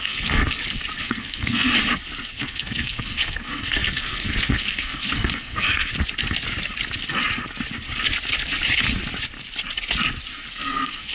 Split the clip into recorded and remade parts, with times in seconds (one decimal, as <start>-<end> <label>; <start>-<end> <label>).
0.0-0.4 remade; 0.4-1.0 recorded; 1.0-1.7 remade; 1.7-2.3 recorded; 2.3-5.9 remade; 5.9-10.5 recorded; 10.5-11.1 remade